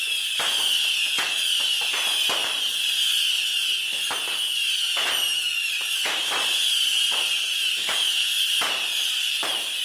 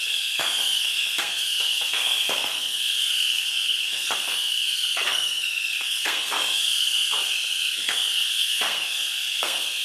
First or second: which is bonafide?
first